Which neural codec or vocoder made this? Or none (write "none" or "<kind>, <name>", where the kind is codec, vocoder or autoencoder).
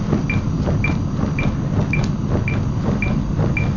none